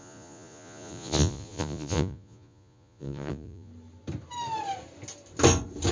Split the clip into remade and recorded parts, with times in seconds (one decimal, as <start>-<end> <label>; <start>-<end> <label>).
0.0-3.7 remade; 3.7-5.9 recorded